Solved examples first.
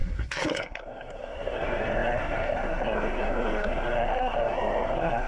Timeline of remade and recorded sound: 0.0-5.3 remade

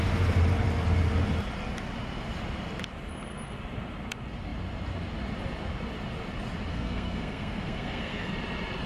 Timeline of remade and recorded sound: 0.0-6.7 recorded; 6.7-8.3 remade; 8.3-8.9 recorded

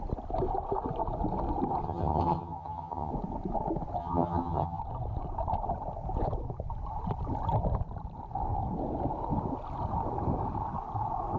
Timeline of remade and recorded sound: 0.0-1.8 recorded; 1.8-3.1 remade; 3.1-4.0 recorded; 4.0-4.8 remade; 4.8-11.4 recorded

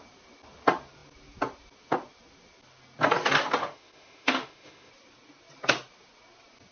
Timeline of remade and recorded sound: 0.0-3.6 recorded; 3.6-4.9 remade; 4.9-6.7 recorded

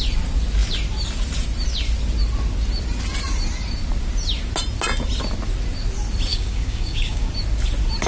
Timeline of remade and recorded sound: 0.0-6.3 recorded; 6.3-7.3 remade; 7.3-8.1 recorded

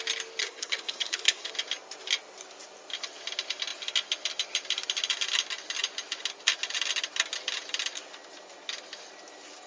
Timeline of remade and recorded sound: 0.0-0.4 recorded; 0.4-1.5 remade; 1.5-9.7 recorded

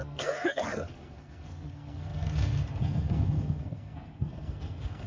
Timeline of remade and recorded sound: 0.0-5.1 remade